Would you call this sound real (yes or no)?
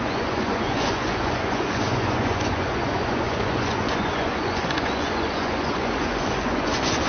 no